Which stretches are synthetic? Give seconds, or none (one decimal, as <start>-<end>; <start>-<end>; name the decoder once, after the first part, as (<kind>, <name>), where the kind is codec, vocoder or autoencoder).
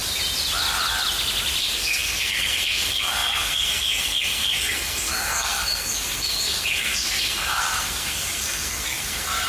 1.6-9.5 (codec, SNAC)